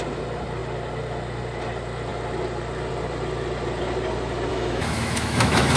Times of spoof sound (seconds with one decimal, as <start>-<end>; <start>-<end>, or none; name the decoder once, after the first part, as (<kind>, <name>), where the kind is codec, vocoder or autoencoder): 4.5-5.8 (autoencoder, DAC-VAE)